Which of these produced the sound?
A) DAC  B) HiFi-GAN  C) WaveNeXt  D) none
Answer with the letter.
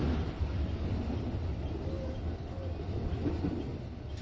D